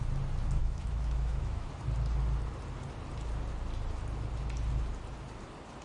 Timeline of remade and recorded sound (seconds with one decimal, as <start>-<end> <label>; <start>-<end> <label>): 0.0-0.6 recorded; 0.6-1.7 remade; 1.7-5.8 recorded